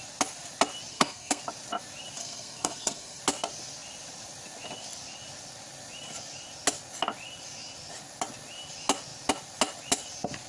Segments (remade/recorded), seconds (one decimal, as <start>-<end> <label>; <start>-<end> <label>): 0.0-0.9 recorded; 0.9-1.4 remade; 1.4-2.2 recorded; 2.2-3.2 remade; 3.2-10.5 recorded